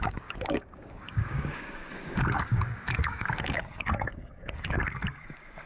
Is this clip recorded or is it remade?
remade